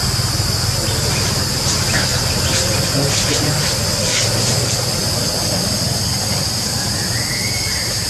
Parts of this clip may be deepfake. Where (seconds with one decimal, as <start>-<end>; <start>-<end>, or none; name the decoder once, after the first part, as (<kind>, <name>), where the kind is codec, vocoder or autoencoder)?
none